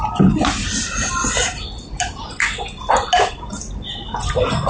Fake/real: real